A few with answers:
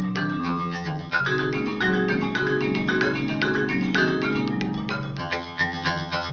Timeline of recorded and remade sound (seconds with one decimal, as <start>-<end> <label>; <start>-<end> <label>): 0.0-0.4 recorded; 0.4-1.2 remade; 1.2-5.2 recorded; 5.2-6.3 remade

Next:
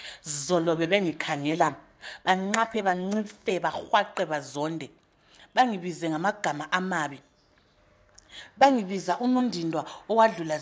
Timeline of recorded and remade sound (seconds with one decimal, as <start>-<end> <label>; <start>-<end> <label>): 0.0-3.5 remade; 3.5-7.9 recorded; 7.9-9.4 remade; 9.4-10.6 recorded

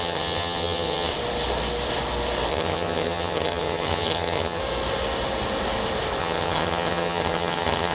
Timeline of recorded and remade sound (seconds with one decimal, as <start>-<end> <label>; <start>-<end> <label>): 0.0-1.1 remade; 1.1-2.5 recorded; 2.5-4.6 remade; 4.6-6.2 recorded; 6.2-7.9 remade

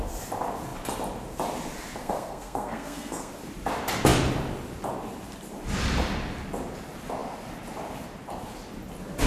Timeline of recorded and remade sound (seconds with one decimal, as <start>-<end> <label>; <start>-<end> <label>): 0.0-2.0 recorded; 2.0-3.3 remade; 3.3-9.3 recorded

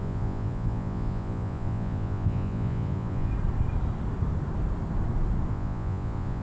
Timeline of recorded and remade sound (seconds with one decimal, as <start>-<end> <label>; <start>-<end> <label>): 0.0-3.3 remade; 3.3-5.5 recorded; 5.5-6.4 remade

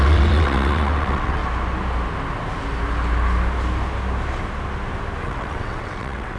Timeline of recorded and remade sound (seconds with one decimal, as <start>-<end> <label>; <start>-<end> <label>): 0.0-1.4 remade; 1.4-5.2 recorded; 5.2-6.4 remade

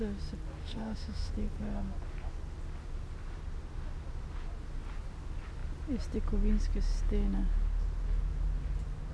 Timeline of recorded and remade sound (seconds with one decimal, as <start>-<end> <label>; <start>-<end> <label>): 0.0-0.6 recorded; 0.6-1.3 remade; 1.3-9.1 recorded

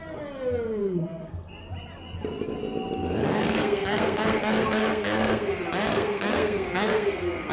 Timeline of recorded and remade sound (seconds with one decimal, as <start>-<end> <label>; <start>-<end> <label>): 0.0-0.8 recorded; 0.8-1.5 remade; 1.5-3.2 recorded; 3.2-5.5 remade; 5.5-5.9 recorded; 5.9-7.5 remade